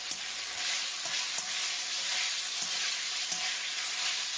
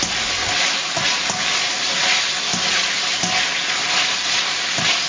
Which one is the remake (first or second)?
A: first